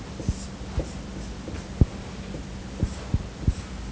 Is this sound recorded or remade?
recorded